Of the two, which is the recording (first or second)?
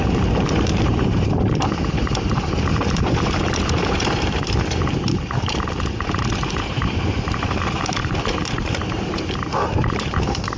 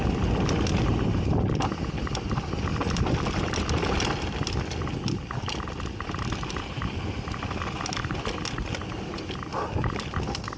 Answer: second